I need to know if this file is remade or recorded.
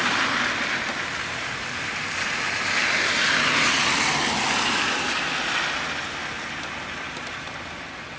recorded